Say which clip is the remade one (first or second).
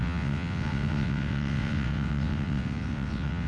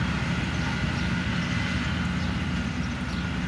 first